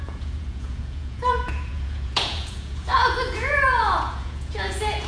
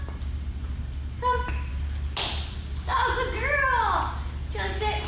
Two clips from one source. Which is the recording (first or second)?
second